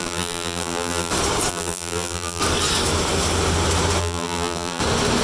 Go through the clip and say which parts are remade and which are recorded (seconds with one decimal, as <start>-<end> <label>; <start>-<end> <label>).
0.0-1.1 remade; 1.1-1.5 recorded; 1.5-2.4 remade; 2.4-4.0 recorded; 4.0-4.8 remade; 4.8-5.2 recorded